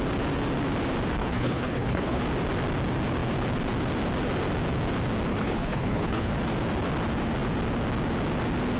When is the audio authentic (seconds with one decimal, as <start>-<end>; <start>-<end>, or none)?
0.0-1.2; 2.2-5.3; 6.3-8.8